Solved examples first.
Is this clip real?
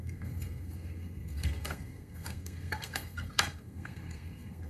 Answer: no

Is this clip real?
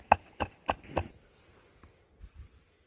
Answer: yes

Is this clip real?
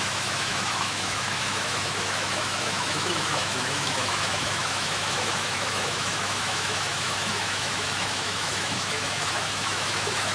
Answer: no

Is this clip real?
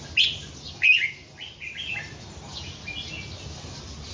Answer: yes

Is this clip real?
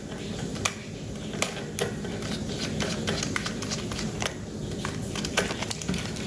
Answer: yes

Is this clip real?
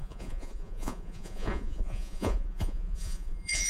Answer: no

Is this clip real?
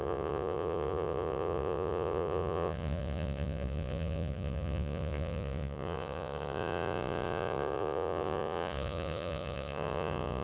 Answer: no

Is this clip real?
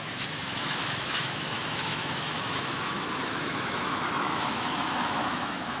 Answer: no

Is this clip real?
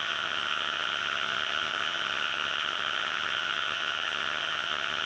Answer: no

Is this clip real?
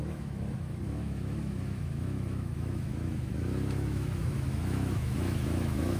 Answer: no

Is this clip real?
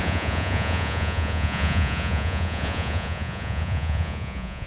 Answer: no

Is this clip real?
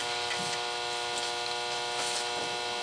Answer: yes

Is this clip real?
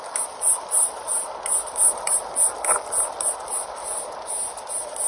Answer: yes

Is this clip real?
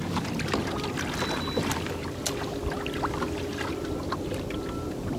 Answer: yes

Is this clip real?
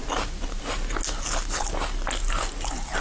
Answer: yes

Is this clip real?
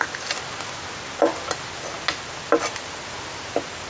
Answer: yes